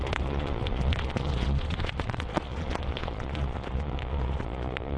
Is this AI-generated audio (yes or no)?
yes